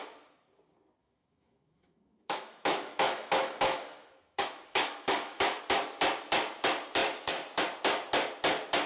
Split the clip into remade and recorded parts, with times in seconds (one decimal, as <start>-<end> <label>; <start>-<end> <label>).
0.0-1.0 recorded; 1.0-5.6 remade; 5.6-8.9 recorded